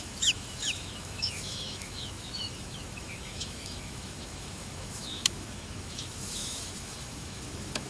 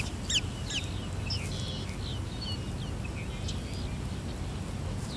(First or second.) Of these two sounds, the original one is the second